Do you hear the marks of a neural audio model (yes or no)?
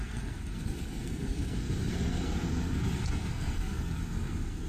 yes